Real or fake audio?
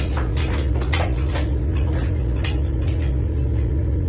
fake